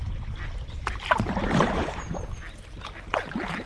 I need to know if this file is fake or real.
fake